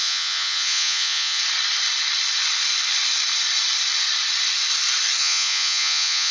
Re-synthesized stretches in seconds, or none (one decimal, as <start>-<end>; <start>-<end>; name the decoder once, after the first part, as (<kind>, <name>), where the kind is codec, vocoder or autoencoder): 0.0-1.4 (vocoder, Vocos); 5.2-6.3